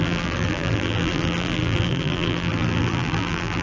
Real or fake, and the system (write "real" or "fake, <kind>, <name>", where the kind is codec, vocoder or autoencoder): fake, vocoder, BigVGAN v2